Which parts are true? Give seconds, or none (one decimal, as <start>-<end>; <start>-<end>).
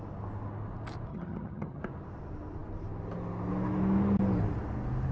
0.0-1.1; 1.8-5.1